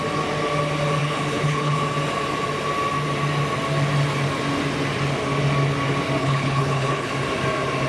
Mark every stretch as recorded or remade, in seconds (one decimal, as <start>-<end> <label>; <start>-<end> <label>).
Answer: 0.0-1.0 recorded; 1.0-1.8 remade; 1.8-6.2 recorded; 6.2-7.1 remade; 7.1-7.9 recorded